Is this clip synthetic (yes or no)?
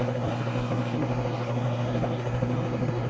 yes